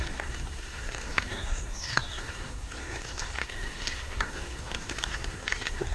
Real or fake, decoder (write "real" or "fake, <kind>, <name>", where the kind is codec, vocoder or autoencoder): fake, codec, SNAC